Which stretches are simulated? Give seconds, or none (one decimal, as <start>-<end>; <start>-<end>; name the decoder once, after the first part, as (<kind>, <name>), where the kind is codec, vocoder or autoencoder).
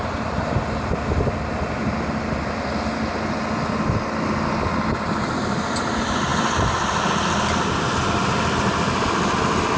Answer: none